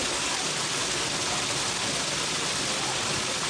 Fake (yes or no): no